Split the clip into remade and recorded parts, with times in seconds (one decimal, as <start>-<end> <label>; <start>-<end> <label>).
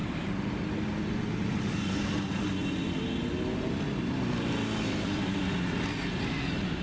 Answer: 0.0-0.6 remade; 0.6-6.8 recorded